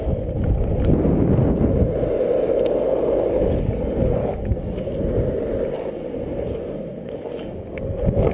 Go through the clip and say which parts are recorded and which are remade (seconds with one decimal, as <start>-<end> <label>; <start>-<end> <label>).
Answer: 0.0-4.2 recorded; 4.2-4.8 remade; 4.8-7.4 recorded; 7.4-8.3 remade